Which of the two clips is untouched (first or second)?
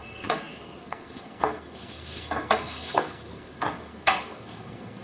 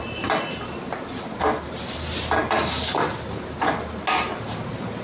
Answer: second